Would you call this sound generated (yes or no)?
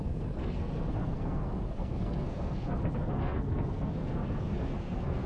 yes